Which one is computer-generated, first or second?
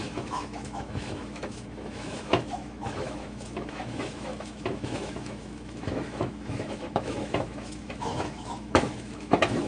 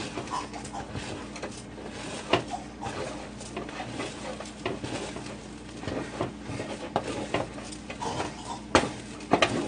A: first